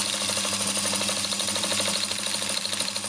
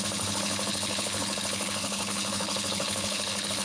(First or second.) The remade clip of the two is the second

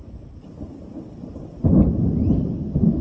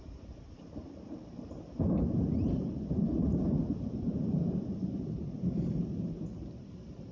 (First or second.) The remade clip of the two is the second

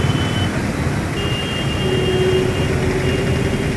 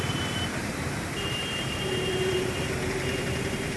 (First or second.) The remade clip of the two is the second